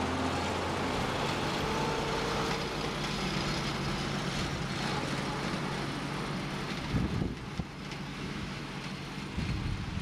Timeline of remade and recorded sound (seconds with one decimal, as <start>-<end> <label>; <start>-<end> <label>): 0.0-8.1 recorded; 8.1-8.7 remade; 8.7-10.0 recorded